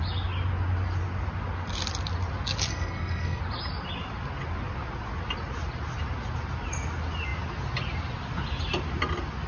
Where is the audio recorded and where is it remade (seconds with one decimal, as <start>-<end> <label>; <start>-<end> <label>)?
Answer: 0.0-2.7 recorded; 2.7-3.4 remade; 3.4-9.5 recorded